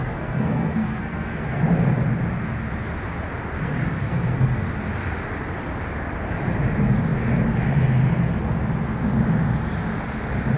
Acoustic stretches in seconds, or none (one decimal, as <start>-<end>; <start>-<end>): 1.6-3.6; 4.7-10.6